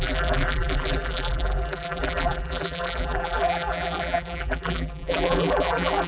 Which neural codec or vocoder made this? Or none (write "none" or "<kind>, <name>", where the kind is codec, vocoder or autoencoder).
vocoder, BigVGAN v2